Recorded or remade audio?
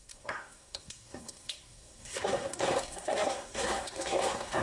remade